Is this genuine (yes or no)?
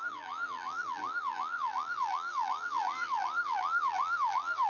no